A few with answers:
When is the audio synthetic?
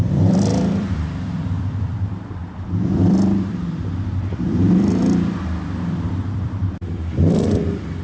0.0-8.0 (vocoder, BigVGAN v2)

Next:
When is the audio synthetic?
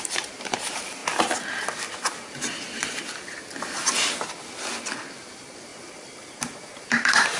0.0-1.0 (vocoder, BigVGAN v2); 5.2-5.7; 6.8-7.4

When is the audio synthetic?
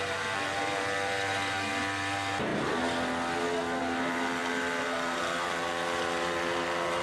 0.0-2.5 (vocoder, BigVGAN v2); 3.8-7.0